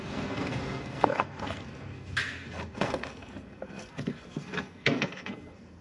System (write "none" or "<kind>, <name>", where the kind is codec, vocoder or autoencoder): codec, SNAC